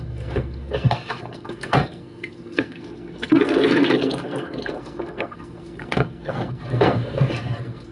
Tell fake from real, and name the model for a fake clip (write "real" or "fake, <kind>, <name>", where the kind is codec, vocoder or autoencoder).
fake, codec, SNAC